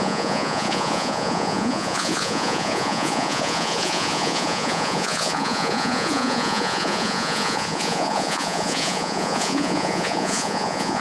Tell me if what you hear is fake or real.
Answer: fake